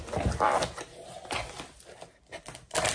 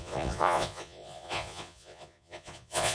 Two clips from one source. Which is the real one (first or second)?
first